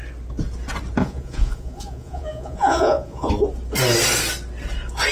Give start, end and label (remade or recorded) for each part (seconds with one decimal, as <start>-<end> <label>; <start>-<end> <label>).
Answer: 0.0-1.0 recorded; 1.0-3.3 remade; 3.3-5.1 recorded